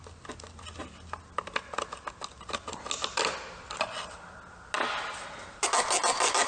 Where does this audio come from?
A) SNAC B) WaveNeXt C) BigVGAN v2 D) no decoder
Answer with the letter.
D